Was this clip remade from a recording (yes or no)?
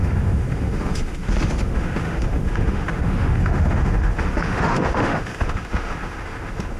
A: yes